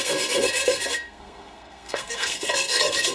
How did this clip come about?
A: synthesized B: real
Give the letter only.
A